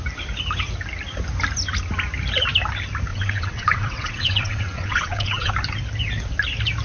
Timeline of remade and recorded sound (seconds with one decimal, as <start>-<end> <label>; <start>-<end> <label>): 0.0-3.1 recorded; 3.1-5.5 remade; 5.5-6.8 recorded